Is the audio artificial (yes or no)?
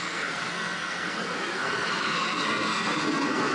yes